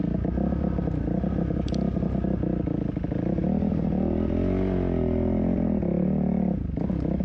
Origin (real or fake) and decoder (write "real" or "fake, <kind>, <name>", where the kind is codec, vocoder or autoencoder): real